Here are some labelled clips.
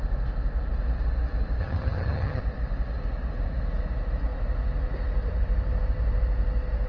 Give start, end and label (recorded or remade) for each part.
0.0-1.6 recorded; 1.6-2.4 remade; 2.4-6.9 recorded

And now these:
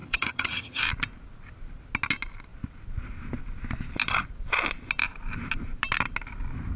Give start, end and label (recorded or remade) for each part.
0.0-0.8 remade; 0.8-6.8 recorded

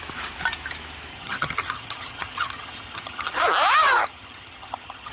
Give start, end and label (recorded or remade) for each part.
0.0-1.1 recorded; 1.1-3.3 remade; 3.3-4.0 recorded; 4.0-5.1 remade

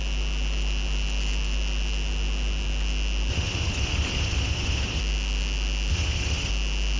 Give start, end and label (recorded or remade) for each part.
0.0-3.3 recorded; 3.3-5.0 remade; 5.0-5.9 recorded; 5.9-6.5 remade; 6.5-7.0 recorded

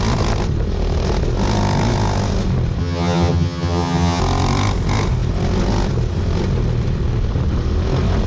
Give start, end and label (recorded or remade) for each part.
0.0-2.8 recorded; 2.8-4.2 remade; 4.2-8.3 recorded

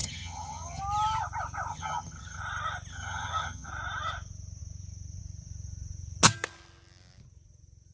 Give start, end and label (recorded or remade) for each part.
0.0-0.8 remade; 0.8-1.7 recorded; 1.7-2.4 remade; 2.4-2.9 recorded; 2.9-3.7 remade; 3.7-7.9 recorded